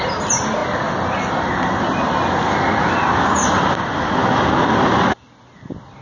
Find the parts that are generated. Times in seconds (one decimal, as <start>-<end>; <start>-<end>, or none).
none